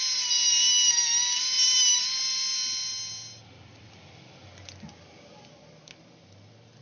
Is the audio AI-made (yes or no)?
no